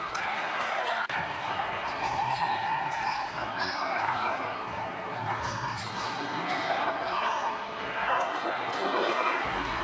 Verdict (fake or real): fake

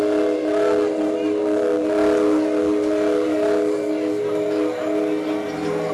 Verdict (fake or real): real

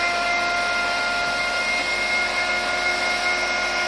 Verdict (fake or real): real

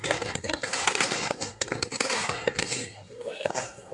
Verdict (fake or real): fake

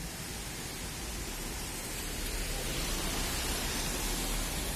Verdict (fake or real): real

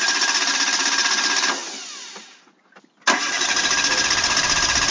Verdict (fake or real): real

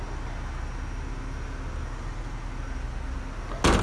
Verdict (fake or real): real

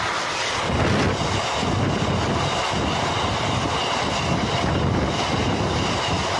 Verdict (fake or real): real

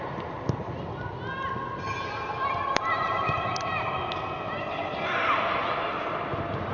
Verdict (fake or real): real